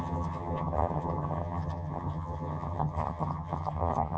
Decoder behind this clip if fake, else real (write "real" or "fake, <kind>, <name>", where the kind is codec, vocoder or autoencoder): fake, vocoder, HiFi-GAN